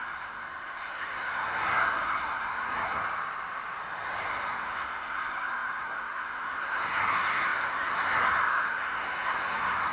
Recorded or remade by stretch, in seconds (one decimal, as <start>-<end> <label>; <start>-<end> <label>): 0.0-3.0 remade; 3.0-4.3 recorded; 4.3-9.9 remade